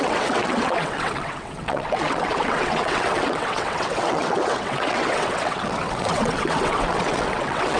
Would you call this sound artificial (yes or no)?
yes